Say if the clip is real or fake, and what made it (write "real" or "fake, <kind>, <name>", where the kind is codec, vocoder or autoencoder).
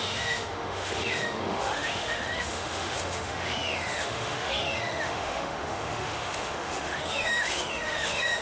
fake, autoencoder, DAC-VAE